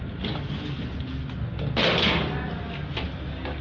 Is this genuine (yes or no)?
yes